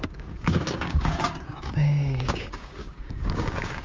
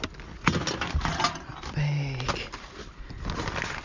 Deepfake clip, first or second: first